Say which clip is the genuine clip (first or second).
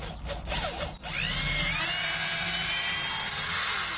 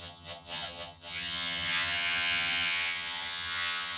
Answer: first